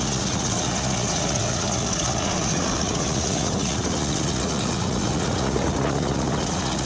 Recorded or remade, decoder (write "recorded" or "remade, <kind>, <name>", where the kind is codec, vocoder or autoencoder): remade, vocoder, Vocos